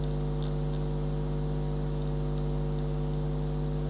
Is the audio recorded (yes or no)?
yes